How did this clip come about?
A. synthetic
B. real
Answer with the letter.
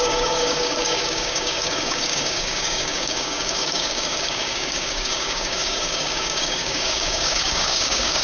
A